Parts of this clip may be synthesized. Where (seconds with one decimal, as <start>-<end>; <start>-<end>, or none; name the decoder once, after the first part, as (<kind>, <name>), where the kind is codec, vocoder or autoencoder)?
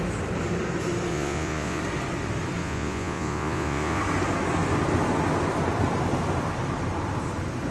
1.1-1.8 (vocoder, Vocos); 2.6-4.0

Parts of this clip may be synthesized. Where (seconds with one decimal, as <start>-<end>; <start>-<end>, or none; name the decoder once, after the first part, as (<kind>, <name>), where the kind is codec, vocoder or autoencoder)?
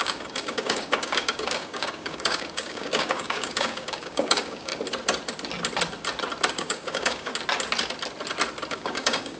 0.0-4.7 (codec, DAC); 6.5-7.3; 8.7-9.4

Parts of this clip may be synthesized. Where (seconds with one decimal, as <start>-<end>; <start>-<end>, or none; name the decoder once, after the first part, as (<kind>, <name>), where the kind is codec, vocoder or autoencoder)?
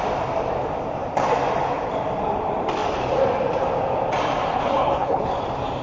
4.5-5.3 (codec, HILCodec)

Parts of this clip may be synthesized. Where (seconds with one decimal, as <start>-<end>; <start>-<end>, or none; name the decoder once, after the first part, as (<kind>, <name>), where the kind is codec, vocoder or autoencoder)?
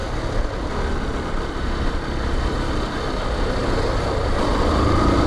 none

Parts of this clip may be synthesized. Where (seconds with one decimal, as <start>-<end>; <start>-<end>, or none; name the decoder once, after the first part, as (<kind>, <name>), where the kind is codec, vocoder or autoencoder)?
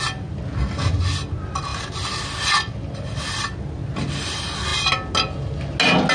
none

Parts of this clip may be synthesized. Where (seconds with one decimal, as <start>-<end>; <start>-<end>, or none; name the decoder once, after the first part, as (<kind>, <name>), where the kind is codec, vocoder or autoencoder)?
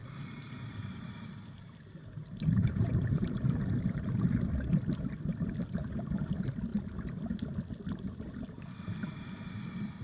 0.0-4.0 (vocoder, BigVGAN v2); 5.8-6.3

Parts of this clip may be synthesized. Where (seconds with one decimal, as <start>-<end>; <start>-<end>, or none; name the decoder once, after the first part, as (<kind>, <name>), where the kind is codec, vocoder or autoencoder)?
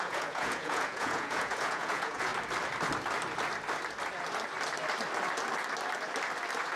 0.0-2.3 (vocoder, Vocos)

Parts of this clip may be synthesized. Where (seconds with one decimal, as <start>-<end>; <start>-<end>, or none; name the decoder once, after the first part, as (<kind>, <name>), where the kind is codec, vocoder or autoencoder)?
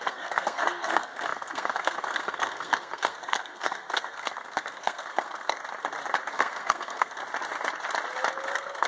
0.0-5.6 (codec, SNAC); 6.3-7.2; 8.5-8.9